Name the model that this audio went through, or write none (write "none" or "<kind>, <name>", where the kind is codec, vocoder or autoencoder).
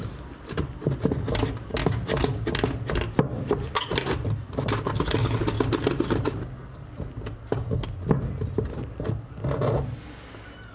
none